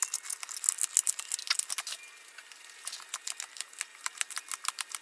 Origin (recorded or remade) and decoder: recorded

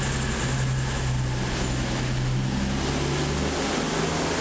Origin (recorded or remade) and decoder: recorded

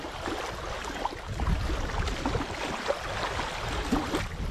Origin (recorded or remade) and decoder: recorded